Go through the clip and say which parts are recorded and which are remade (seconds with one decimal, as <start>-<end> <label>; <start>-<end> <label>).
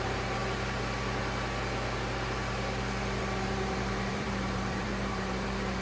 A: 0.0-0.4 remade; 0.4-3.2 recorded; 3.2-5.8 remade